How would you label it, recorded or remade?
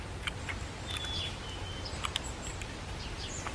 recorded